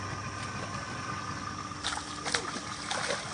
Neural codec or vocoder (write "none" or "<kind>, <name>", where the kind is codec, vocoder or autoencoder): none